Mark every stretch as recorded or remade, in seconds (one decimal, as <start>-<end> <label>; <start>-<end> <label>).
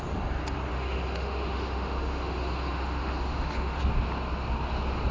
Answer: 0.0-0.7 recorded; 0.7-3.8 remade; 3.8-5.1 recorded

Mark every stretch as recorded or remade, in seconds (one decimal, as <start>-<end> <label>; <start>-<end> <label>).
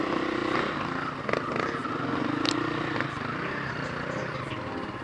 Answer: 0.0-5.0 recorded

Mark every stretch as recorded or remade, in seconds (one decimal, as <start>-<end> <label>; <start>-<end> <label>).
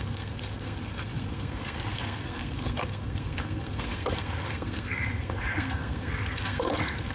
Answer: 0.0-7.1 remade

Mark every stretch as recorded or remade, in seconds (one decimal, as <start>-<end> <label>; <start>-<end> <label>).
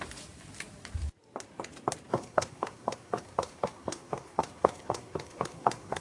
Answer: 0.0-2.1 recorded; 2.1-6.0 remade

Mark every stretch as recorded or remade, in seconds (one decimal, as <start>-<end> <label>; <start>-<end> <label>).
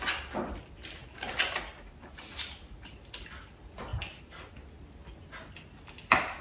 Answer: 0.0-6.4 recorded